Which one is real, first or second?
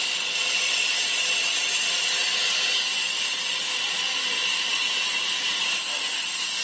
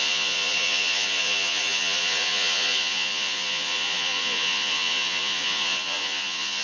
first